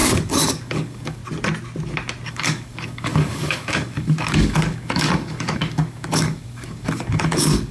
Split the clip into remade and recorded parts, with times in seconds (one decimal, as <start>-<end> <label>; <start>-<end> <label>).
0.0-1.2 remade; 1.2-2.3 recorded; 2.3-7.7 remade